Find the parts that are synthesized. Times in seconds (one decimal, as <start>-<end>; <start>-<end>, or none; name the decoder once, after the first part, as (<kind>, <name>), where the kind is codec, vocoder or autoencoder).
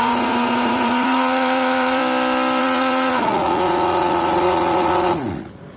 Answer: 0.0-2.0 (vocoder, Vocos); 2.6-5.8